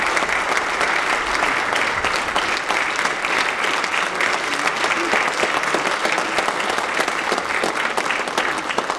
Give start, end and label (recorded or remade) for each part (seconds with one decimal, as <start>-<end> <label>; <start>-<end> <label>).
0.0-9.0 recorded

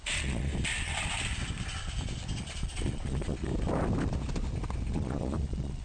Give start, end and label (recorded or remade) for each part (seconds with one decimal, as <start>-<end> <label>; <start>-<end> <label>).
0.0-0.5 remade; 0.5-2.4 recorded; 2.4-3.5 remade; 3.5-4.9 recorded; 4.9-5.8 remade

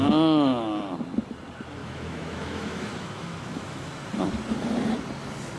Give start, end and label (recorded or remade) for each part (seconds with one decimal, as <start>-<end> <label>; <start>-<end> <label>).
0.0-1.8 recorded; 1.8-3.9 remade; 3.9-5.6 recorded